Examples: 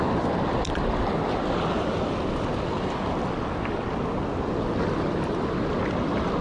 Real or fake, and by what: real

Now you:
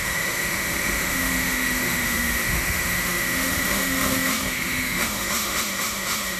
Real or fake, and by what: fake, autoencoder, DAC-VAE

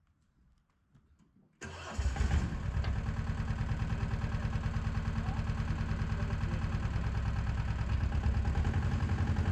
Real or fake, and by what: real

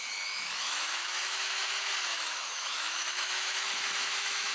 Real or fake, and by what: fake, autoencoder, DAC-VAE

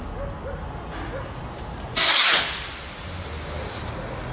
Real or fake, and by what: real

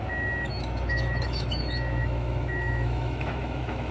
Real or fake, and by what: fake, autoencoder, DAC-VAE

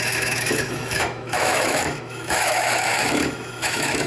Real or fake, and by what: fake, autoencoder, DAC-VAE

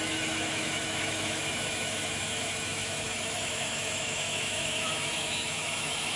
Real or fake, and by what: fake, autoencoder, DAC-VAE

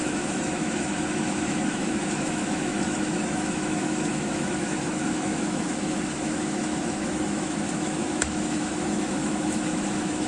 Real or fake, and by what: fake, autoencoder, DAC-VAE